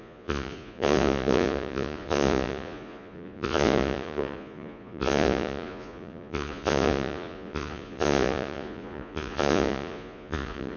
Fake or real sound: fake